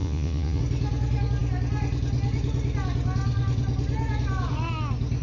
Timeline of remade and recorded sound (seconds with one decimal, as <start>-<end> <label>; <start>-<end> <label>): 0.0-0.6 remade; 0.6-5.2 recorded